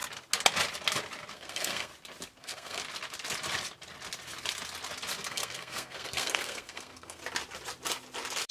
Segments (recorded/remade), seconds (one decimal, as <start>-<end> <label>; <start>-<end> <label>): 0.0-1.3 recorded; 1.3-1.9 remade; 1.9-2.4 recorded; 2.4-2.8 remade; 2.8-5.3 recorded; 5.3-7.2 remade; 7.2-8.5 recorded